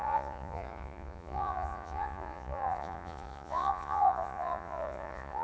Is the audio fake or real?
fake